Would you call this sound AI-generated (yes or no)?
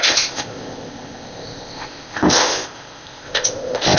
yes